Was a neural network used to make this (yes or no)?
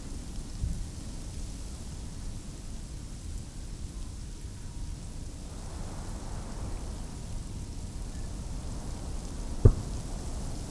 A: no